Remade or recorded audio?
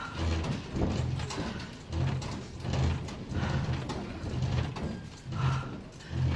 recorded